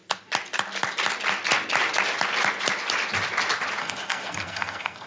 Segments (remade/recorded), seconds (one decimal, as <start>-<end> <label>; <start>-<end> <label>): 0.0-3.8 recorded; 3.8-5.1 remade